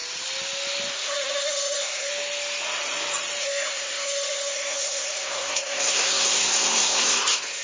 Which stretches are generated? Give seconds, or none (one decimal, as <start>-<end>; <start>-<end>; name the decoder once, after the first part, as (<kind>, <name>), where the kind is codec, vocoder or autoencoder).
0.9-2.1 (codec, SNAC); 3.4-7.6